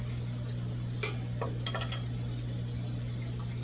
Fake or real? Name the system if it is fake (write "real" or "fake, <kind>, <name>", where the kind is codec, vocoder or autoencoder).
real